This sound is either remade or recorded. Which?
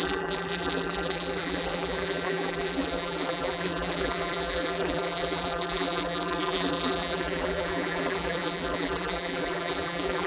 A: remade